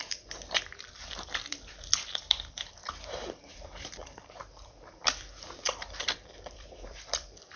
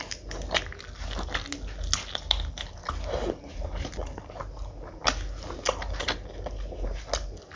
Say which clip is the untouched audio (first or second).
second